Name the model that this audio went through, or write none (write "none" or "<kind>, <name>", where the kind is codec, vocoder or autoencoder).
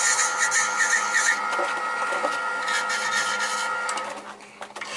none